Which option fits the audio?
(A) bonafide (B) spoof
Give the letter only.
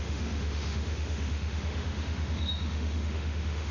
B